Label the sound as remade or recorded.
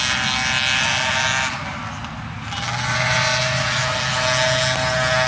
recorded